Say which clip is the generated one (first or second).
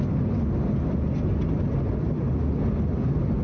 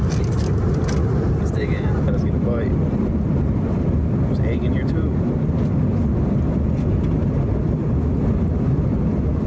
second